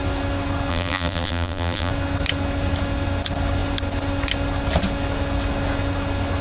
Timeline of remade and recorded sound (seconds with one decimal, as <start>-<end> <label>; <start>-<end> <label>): 0.0-0.7 recorded; 0.7-1.9 remade; 1.9-6.4 recorded

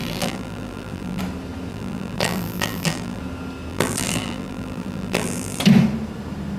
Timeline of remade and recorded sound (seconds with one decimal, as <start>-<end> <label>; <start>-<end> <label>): 0.0-1.2 remade; 1.2-1.7 recorded; 1.7-3.2 remade; 3.2-3.7 recorded; 3.7-5.6 remade; 5.6-6.6 recorded

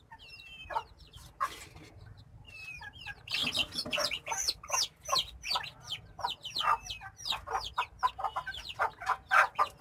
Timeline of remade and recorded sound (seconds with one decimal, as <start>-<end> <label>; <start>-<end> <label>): 0.0-3.4 remade; 3.4-7.5 recorded; 7.5-9.8 remade

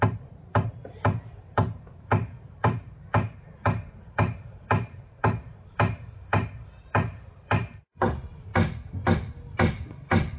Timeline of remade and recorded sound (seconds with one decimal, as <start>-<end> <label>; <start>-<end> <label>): 0.0-8.5 remade; 8.5-10.4 recorded